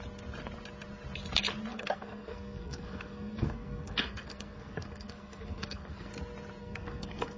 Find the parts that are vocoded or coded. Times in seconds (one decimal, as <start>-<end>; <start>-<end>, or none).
1.7-6.1; 6.6-7.4